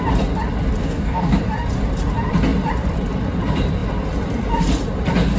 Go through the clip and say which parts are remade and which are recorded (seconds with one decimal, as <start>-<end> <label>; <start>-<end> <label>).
0.0-0.8 recorded; 0.8-1.4 remade; 1.4-5.4 recorded